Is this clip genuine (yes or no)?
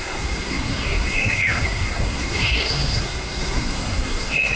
no